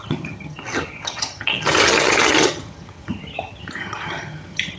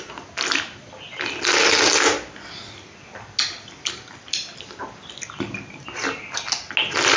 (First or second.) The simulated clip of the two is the first